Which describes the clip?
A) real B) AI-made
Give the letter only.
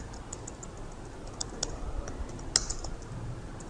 A